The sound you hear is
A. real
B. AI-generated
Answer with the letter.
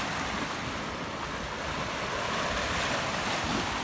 A